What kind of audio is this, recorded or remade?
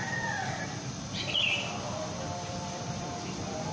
remade